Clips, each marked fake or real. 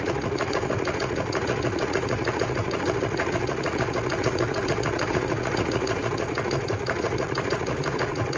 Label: fake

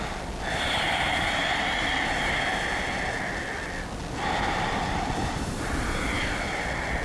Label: real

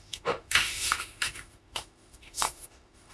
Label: fake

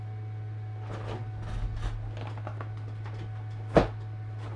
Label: real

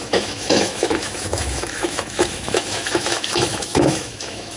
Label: fake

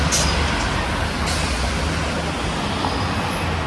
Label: real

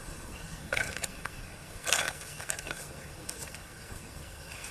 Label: fake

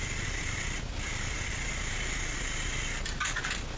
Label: fake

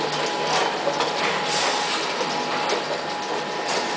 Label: real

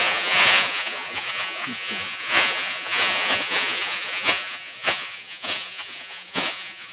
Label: fake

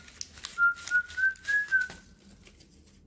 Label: real